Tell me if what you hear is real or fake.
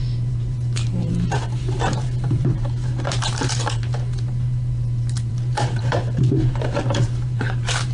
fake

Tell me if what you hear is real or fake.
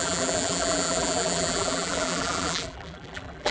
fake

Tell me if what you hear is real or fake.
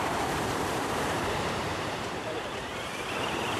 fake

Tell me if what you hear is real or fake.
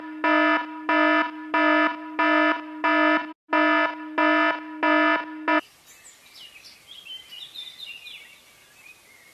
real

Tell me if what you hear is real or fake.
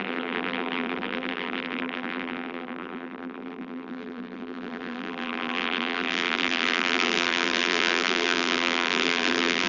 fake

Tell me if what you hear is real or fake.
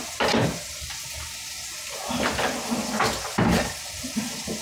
real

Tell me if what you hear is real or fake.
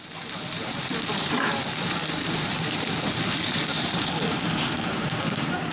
fake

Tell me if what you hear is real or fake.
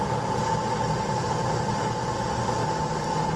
real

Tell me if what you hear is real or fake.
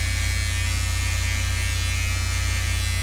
real